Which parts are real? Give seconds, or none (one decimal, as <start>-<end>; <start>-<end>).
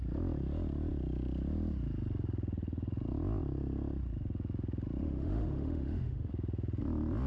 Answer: 0.0-5.0; 6.3-7.3